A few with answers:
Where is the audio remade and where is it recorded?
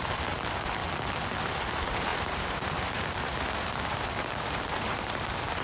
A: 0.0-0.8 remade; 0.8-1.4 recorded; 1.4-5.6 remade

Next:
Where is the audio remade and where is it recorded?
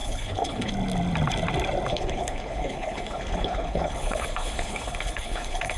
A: 0.0-0.7 remade; 0.7-1.9 recorded; 1.9-5.8 remade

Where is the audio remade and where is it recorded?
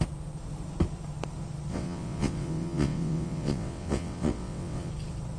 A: 0.0-1.7 recorded; 1.7-4.9 remade; 4.9-5.4 recorded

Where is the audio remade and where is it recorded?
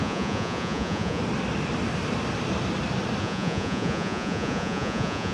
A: 0.0-1.2 remade; 1.2-3.2 recorded; 3.2-5.3 remade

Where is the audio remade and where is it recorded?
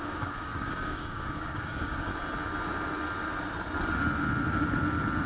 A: 0.0-2.1 remade; 2.1-5.3 recorded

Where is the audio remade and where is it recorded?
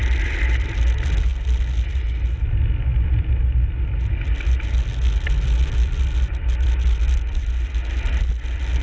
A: 0.0-8.8 recorded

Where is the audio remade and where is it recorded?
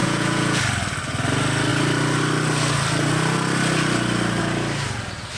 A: 0.0-0.6 remade; 0.6-5.4 recorded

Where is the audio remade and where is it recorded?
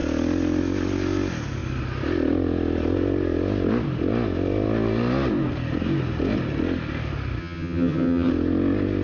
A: 0.0-7.4 recorded; 7.4-8.3 remade; 8.3-9.0 recorded